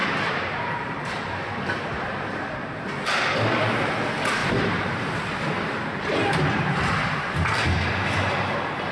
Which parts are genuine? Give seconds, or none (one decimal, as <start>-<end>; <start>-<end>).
2.9-4.4; 7.2-8.9